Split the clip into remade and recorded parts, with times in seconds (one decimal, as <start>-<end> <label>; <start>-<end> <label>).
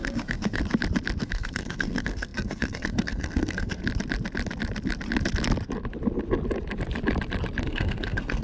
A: 0.0-0.6 remade; 0.6-1.2 recorded; 1.2-3.8 remade; 3.8-7.6 recorded; 7.6-8.4 remade